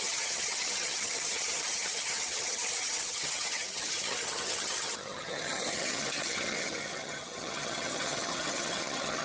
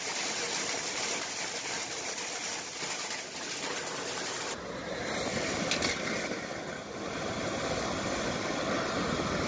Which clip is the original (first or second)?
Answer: second